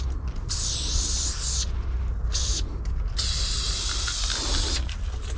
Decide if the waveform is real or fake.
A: real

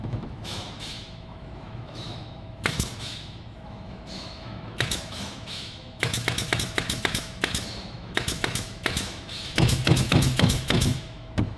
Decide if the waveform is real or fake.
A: fake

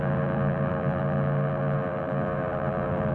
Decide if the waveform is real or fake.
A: fake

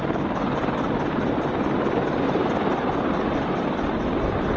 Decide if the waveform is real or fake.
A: real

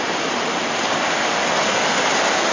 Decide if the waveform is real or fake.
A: real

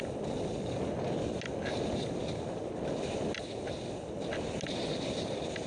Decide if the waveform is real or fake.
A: real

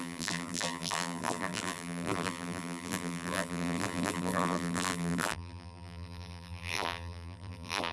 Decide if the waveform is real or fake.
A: fake